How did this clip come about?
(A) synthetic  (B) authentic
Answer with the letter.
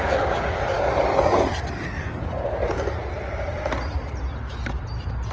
B